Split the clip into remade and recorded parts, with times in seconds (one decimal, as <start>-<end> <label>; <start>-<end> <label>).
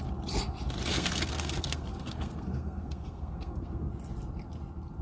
0.0-0.9 recorded; 0.9-3.9 remade; 3.9-5.0 recorded